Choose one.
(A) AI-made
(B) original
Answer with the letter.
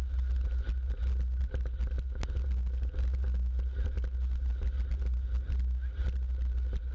B